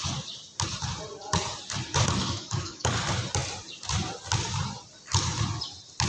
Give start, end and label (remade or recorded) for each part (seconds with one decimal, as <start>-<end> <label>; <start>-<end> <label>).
0.0-2.2 recorded; 2.2-2.9 remade; 2.9-6.1 recorded